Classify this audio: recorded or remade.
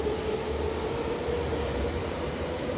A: recorded